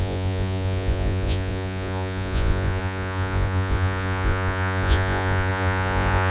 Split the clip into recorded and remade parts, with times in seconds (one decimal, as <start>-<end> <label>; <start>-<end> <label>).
0.0-6.3 remade